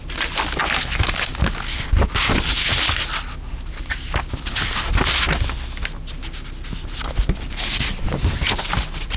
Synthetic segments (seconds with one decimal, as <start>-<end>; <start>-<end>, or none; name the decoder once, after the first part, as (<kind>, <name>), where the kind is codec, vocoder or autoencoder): none